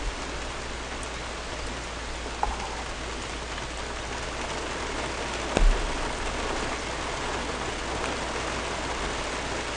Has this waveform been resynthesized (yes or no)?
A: no